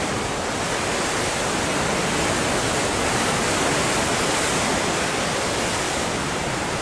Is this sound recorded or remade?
recorded